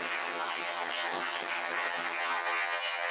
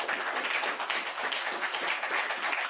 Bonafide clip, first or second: second